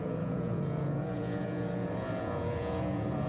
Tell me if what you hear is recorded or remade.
remade